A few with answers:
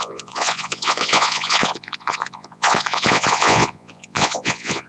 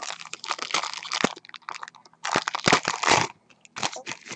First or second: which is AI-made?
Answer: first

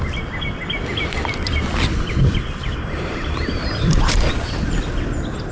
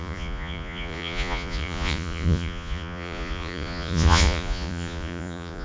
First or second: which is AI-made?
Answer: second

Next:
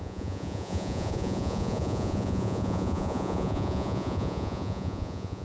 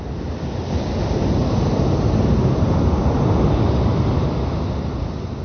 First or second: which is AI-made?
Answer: first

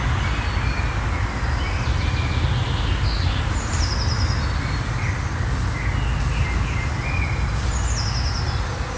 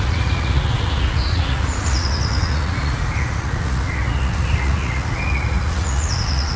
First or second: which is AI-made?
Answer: second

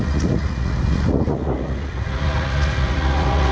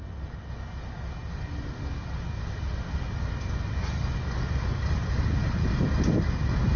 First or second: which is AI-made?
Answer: first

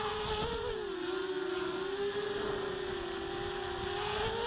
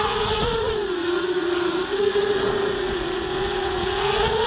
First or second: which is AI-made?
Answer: second